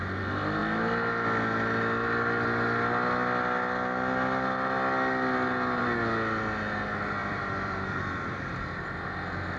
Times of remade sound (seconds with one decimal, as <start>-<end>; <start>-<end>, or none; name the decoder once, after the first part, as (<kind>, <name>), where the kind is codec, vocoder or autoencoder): 7.2-8.6 (vocoder, BigVGAN v2)